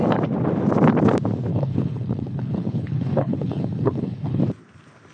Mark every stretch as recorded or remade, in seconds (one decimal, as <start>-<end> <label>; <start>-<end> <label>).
0.0-1.5 recorded; 1.5-4.4 remade; 4.4-5.1 recorded